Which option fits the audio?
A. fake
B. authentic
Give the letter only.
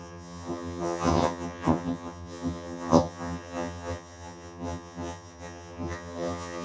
A